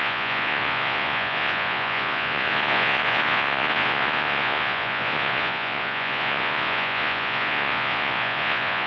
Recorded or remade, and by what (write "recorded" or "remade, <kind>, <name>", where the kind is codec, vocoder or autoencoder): remade, vocoder, Vocos